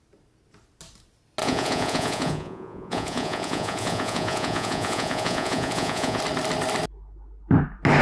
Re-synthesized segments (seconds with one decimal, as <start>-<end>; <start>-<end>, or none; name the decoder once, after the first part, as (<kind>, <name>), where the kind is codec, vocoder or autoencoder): 1.4-6.2 (vocoder, Vocos)